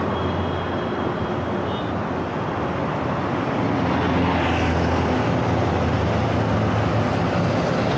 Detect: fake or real real